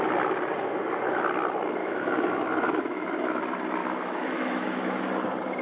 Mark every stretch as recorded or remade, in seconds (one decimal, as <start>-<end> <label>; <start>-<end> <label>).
0.0-1.8 recorded; 1.8-3.4 remade; 3.4-3.8 recorded; 3.8-5.0 remade; 5.0-5.6 recorded